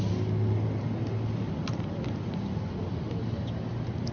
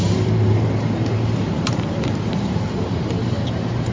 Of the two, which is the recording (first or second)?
first